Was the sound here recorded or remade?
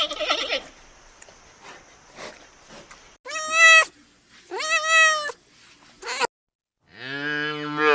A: recorded